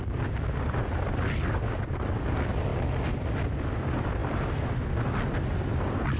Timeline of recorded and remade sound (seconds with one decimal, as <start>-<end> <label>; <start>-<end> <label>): 0.0-4.2 recorded; 4.2-4.7 remade; 4.7-6.2 recorded